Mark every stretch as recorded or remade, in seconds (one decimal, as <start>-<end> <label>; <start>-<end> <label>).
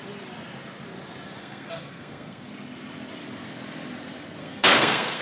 0.0-1.4 recorded; 1.4-2.5 remade; 2.5-4.4 recorded; 4.4-5.2 remade